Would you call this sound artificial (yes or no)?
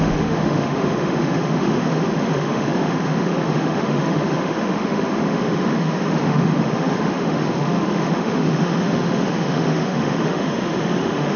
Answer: yes